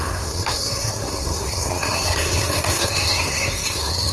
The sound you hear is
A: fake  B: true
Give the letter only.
A